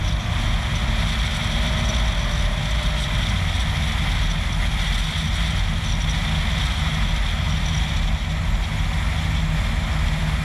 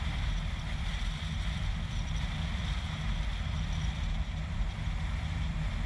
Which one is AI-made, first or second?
second